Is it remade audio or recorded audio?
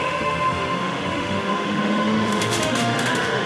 remade